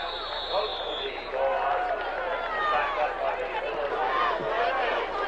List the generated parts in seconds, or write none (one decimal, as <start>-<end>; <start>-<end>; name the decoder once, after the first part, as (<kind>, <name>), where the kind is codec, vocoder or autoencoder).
none